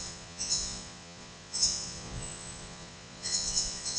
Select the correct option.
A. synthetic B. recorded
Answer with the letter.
A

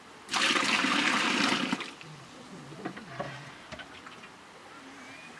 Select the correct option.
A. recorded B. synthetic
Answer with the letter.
A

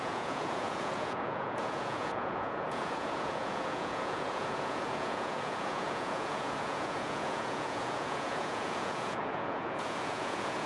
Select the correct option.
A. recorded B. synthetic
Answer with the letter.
B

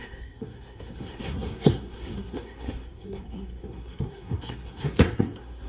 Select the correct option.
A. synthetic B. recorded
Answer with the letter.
A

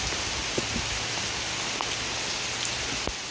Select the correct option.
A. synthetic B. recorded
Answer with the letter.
B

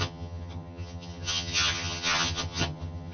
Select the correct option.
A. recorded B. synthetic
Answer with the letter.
B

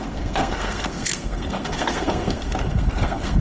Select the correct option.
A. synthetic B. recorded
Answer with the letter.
A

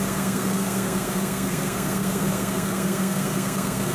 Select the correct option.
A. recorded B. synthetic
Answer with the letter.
B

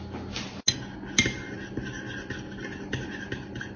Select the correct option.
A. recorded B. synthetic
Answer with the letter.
A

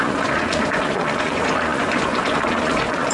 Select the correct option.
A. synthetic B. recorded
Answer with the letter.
A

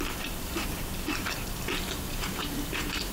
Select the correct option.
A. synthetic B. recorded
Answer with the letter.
A